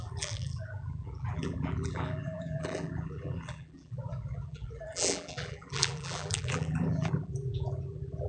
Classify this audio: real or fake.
fake